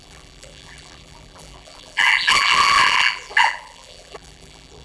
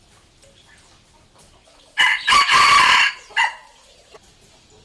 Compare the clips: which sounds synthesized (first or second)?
first